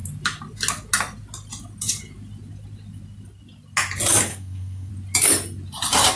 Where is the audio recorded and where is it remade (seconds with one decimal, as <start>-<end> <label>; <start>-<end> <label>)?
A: 0.0-4.3 recorded; 4.3-4.9 remade; 4.9-6.2 recorded